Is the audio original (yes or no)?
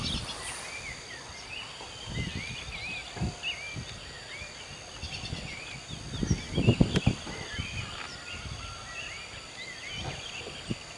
yes